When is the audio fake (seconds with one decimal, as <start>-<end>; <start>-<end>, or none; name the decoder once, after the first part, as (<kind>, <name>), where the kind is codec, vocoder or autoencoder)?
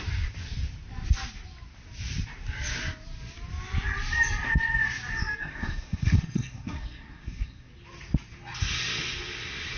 5.4-7.7 (codec, SNAC)